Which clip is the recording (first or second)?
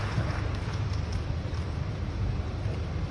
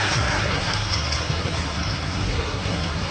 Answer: first